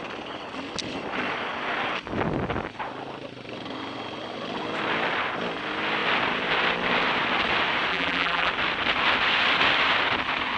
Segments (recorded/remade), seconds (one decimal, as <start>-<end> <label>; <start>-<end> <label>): 0.0-7.9 recorded; 7.9-8.5 remade; 8.5-10.6 recorded